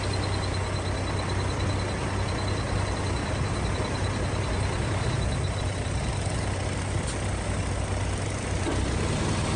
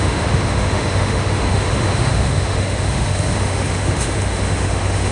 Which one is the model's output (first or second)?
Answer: second